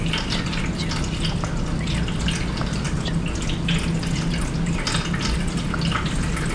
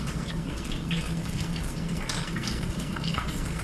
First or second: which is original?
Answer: first